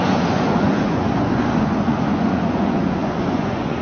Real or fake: fake